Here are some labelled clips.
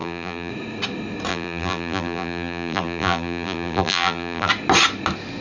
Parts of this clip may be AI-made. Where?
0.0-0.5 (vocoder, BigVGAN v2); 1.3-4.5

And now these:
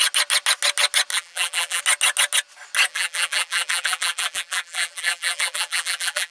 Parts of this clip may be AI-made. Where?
1.1-1.8 (vocoder, BigVGAN v2); 2.9-6.3

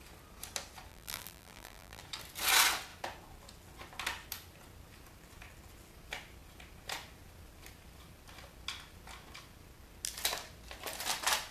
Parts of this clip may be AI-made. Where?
0.9-2.0 (vocoder, BigVGAN v2)

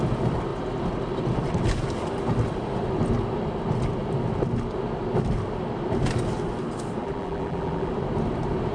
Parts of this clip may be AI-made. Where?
7.0-7.9 (vocoder, BigVGAN v2)

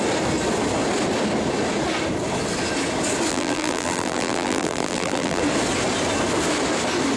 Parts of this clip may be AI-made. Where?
3.3-5.4 (vocoder, BigVGAN v2)

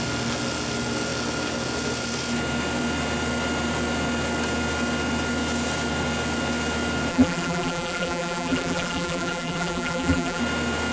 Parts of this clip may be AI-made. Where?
7.1-10.4 (vocoder, BigVGAN v2)